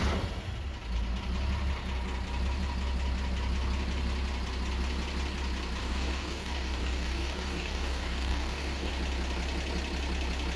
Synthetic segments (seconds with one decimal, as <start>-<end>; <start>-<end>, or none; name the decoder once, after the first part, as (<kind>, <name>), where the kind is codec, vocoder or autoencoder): 5.8-8.9 (codec, DAC)